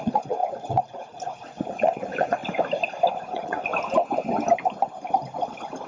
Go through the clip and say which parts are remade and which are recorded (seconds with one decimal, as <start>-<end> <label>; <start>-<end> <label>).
0.0-2.4 remade; 2.4-3.1 recorded; 3.1-3.7 remade; 3.7-5.9 recorded